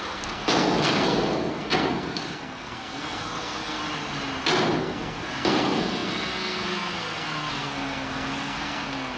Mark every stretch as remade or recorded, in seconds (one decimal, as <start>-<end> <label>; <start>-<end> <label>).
0.0-3.8 remade; 3.8-4.8 recorded; 4.8-9.2 remade